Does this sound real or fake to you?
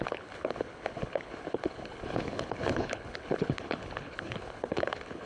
fake